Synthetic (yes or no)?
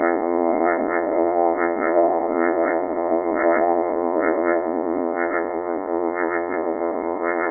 yes